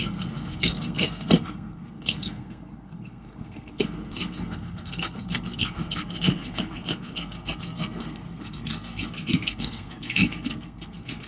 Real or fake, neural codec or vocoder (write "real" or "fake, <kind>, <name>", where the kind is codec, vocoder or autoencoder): fake, codec, SNAC